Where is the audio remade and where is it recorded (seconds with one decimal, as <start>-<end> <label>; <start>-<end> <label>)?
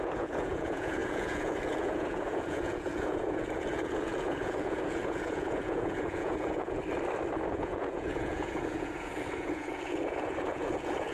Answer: 0.0-6.8 remade; 6.8-7.5 recorded; 7.5-11.1 remade